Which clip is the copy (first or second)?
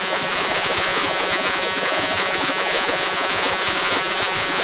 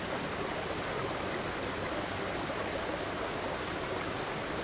first